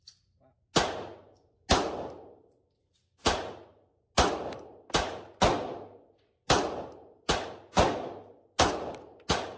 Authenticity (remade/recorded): recorded